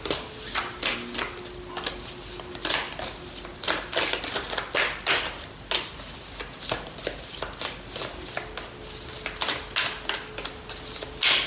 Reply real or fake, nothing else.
real